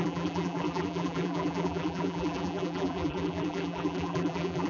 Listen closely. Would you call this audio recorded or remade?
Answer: remade